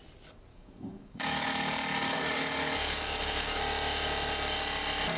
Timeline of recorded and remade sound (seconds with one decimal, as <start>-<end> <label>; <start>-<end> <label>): 0.0-0.5 recorded; 0.5-3.6 remade; 3.6-5.2 recorded